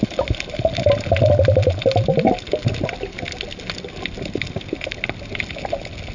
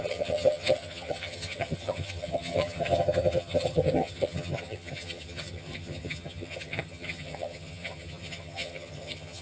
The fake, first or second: second